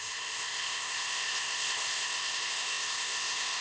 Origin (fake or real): fake